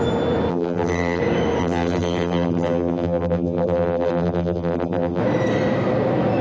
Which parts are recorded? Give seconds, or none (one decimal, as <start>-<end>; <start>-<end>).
0.0-0.5; 1.2-1.6; 5.2-6.4